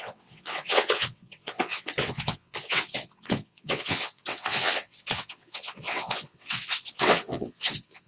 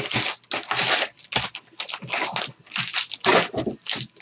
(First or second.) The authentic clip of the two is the second